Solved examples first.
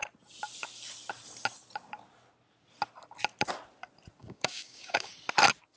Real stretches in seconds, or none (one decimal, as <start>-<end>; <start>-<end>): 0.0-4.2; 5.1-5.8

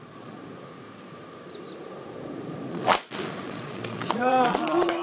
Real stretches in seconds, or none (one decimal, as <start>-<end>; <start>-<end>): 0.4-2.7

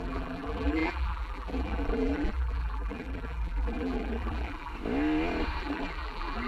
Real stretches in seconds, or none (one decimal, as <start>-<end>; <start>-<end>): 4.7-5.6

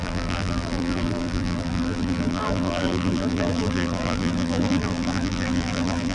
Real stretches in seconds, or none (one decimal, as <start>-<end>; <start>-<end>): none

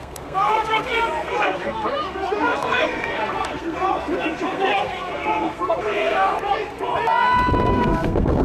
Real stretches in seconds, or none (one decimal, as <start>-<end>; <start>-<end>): 6.9-7.7

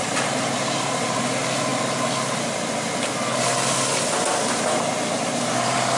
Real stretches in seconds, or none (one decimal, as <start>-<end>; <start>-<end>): 1.7-5.3

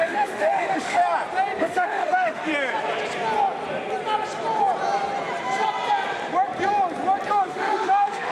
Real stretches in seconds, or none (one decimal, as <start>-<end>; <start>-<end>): 1.0-1.6; 2.5-7.3

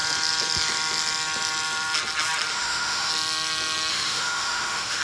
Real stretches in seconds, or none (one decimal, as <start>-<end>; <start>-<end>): 0.0-2.5; 3.1-3.9